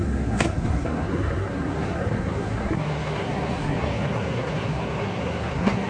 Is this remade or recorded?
remade